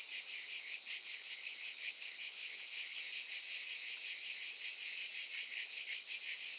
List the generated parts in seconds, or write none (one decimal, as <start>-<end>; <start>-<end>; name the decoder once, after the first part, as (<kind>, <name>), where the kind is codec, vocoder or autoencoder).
0.6-3.0 (codec, HILCodec); 5.4-6.1